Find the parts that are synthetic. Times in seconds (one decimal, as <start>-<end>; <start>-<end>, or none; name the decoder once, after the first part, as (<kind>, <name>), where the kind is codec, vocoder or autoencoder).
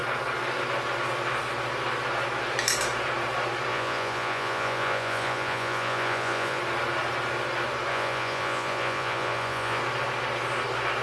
3.7-6.6 (vocoder, Vocos); 7.9-9.8